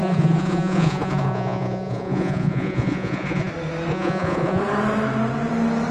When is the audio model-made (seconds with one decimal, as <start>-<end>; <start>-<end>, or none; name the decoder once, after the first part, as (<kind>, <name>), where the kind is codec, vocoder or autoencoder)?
0.0-3.5 (vocoder, Vocos); 3.9-4.6